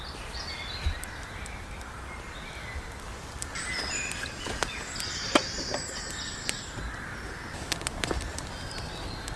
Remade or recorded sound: remade